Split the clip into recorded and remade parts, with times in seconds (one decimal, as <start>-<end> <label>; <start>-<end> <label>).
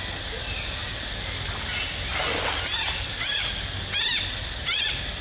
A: 0.0-5.2 recorded